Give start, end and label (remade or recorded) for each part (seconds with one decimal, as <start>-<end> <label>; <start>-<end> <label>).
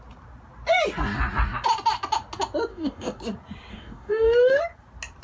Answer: 0.0-2.7 recorded; 2.7-3.2 remade; 3.2-3.7 recorded; 3.7-4.6 remade; 4.6-5.2 recorded